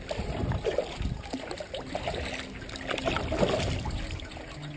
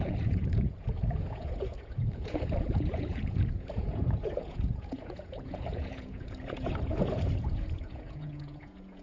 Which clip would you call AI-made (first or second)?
second